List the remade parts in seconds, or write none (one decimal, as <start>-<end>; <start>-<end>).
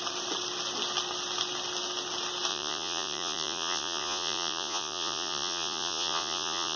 2.5-6.8